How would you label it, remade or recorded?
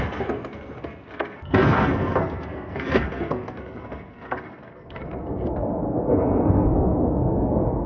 remade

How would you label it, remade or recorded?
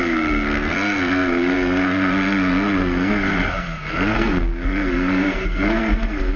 remade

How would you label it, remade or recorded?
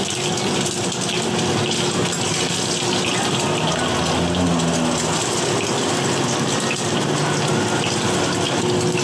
recorded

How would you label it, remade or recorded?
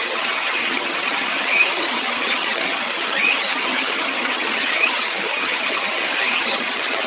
remade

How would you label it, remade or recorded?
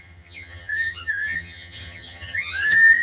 remade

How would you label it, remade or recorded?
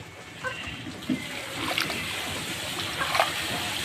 recorded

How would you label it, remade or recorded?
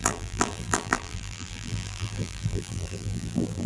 remade